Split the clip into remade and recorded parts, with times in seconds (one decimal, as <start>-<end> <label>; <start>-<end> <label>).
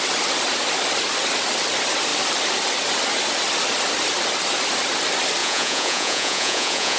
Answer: 0.0-5.4 recorded; 5.4-7.0 remade